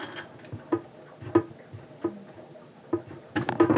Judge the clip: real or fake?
real